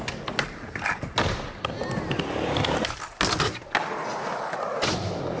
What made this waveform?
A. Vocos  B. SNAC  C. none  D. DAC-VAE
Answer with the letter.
C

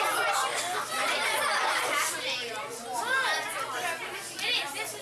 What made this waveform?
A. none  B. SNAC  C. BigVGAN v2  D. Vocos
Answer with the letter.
A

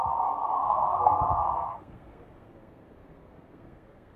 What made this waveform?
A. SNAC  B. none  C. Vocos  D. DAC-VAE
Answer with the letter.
A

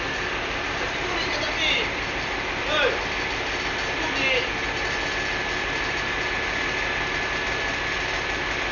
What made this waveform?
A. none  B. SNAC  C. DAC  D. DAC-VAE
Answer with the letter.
A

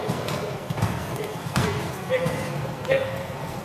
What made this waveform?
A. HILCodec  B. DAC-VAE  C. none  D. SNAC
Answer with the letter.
D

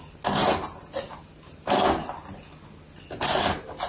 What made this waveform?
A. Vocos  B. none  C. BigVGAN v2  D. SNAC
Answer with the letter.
B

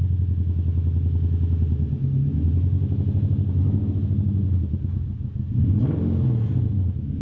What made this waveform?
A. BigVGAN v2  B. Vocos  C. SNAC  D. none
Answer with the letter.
D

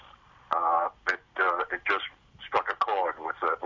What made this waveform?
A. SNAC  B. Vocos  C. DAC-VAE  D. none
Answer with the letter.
D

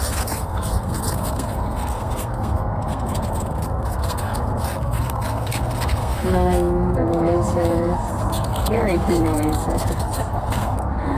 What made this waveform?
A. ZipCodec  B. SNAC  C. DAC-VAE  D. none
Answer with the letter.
B